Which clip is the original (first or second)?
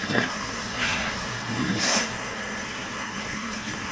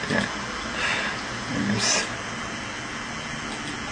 second